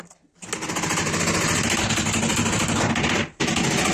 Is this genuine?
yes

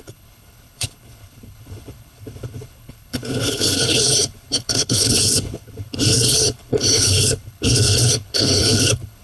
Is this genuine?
no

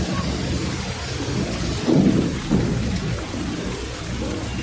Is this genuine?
yes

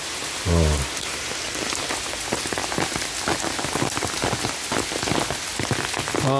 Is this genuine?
yes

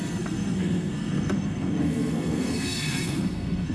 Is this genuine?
no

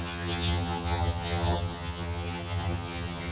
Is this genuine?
no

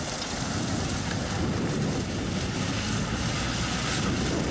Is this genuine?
yes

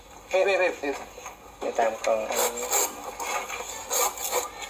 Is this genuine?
yes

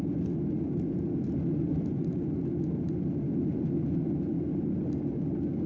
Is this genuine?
yes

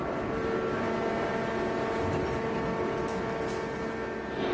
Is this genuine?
yes